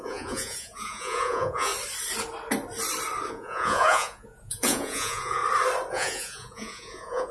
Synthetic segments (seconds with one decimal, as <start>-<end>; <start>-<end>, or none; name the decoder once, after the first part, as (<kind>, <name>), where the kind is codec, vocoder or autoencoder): 0.0-1.7 (vocoder, Vocos); 3.3-5.4; 5.9-7.3